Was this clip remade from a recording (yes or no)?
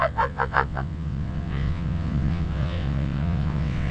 yes